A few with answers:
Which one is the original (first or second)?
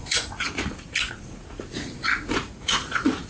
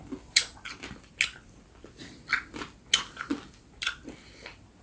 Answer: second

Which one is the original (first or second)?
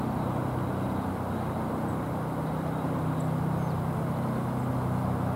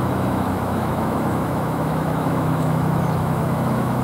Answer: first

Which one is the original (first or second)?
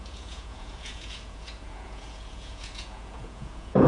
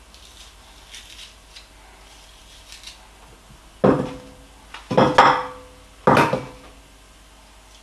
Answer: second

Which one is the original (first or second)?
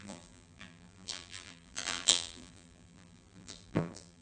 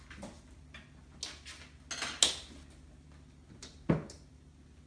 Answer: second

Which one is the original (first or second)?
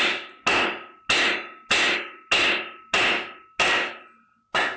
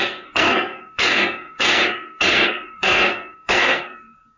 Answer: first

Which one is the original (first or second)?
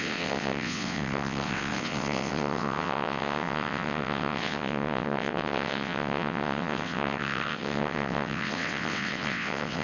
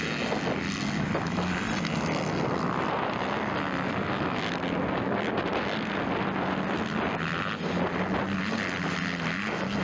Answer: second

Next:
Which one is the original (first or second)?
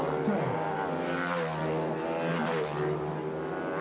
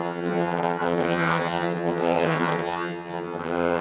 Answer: first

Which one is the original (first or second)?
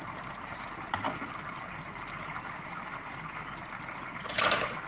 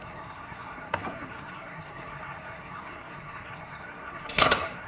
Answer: first